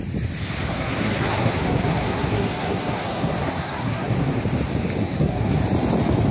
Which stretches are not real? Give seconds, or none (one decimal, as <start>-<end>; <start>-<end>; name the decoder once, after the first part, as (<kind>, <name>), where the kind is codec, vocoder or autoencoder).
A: 0.7-4.4 (codec, SNAC); 5.0-5.6